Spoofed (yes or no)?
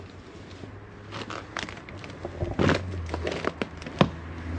no